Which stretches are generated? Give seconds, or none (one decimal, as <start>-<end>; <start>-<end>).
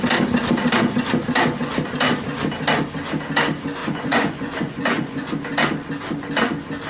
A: 3.8-5.3